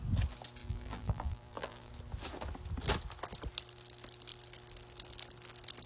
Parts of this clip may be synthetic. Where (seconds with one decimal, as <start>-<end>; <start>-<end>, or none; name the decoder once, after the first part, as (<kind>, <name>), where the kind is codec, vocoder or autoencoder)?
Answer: 0.6-1.9 (vocoder, BigVGAN v2)

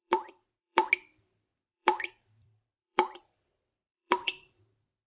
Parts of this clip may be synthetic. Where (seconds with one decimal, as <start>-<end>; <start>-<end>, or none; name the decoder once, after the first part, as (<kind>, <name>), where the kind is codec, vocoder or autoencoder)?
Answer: 0.0-0.9 (vocoder, BigVGAN v2); 1.5-4.6

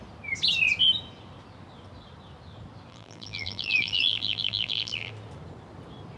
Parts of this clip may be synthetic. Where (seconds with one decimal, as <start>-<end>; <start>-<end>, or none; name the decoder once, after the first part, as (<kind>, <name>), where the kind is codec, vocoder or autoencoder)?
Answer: 2.9-5.1 (vocoder, BigVGAN v2)